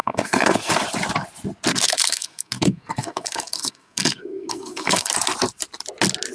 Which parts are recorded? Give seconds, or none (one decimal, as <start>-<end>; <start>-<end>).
0.7-1.7; 5.1-6.3